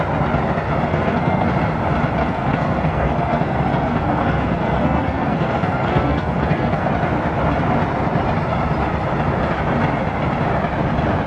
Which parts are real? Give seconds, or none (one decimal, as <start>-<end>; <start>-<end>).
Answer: 0.0-0.9; 1.5-2.2; 6.9-11.3